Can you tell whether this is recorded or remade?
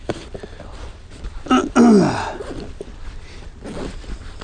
recorded